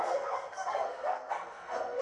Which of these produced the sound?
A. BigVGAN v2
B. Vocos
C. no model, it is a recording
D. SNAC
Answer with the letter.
D